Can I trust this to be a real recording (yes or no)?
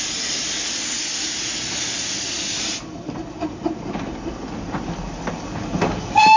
yes